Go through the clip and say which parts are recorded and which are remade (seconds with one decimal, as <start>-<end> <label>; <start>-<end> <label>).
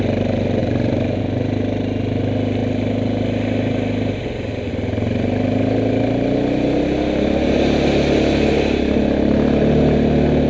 0.0-0.6 recorded; 0.6-1.2 remade; 1.2-10.5 recorded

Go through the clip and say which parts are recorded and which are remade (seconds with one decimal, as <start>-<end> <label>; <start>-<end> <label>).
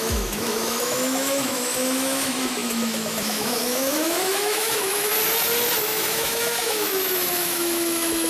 0.0-5.1 remade; 5.1-5.8 recorded; 5.8-8.3 remade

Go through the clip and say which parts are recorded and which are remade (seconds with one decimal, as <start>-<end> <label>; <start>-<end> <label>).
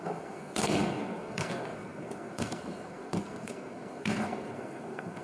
0.0-5.2 remade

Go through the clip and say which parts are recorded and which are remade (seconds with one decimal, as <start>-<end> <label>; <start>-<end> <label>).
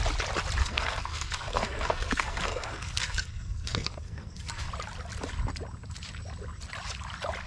0.0-0.6 recorded; 0.6-4.7 remade; 4.7-7.5 recorded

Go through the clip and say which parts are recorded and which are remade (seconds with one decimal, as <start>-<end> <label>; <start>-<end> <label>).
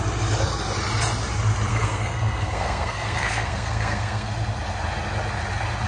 0.0-1.7 recorded; 1.7-4.3 remade; 4.3-5.9 recorded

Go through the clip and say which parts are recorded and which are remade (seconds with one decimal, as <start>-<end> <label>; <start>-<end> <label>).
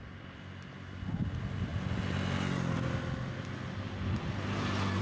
0.0-5.0 recorded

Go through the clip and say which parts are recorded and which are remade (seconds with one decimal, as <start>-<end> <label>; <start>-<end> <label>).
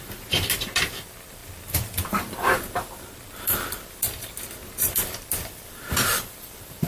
0.0-6.9 remade